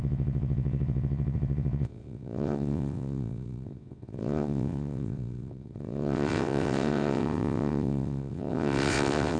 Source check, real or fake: fake